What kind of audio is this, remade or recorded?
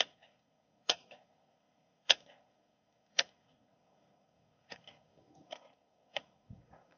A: remade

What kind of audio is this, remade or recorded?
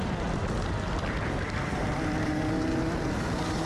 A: recorded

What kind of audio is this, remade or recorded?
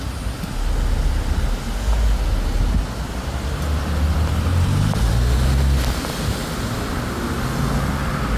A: recorded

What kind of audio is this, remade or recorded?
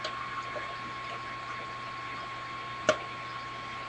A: recorded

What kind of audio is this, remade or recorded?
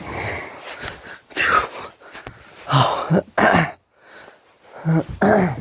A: recorded